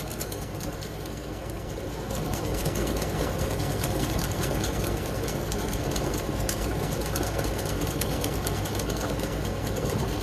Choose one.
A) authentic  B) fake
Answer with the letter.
B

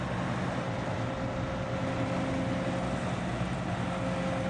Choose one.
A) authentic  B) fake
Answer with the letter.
A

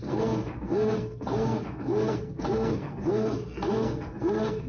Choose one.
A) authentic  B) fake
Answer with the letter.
B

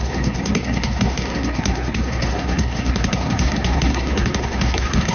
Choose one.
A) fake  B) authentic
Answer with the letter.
A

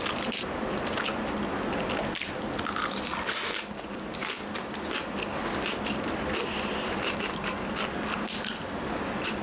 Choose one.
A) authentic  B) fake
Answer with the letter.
A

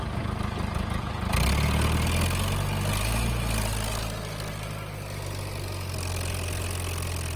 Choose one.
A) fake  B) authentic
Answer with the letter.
B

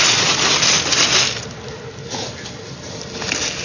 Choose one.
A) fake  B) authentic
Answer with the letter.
B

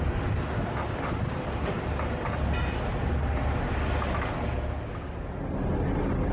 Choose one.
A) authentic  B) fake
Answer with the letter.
A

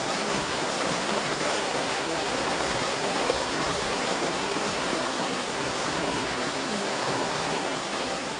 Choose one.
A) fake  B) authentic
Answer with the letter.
A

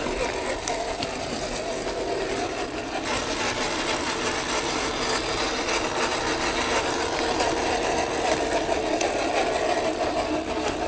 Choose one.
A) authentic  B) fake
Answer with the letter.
A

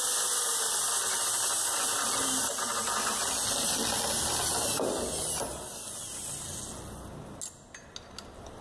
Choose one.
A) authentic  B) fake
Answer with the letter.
A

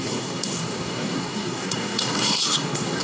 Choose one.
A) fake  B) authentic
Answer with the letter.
A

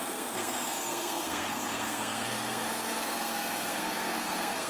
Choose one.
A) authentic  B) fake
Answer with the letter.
B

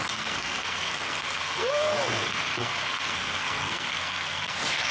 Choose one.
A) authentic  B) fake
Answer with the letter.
B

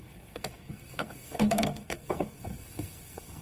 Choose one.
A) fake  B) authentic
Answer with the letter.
A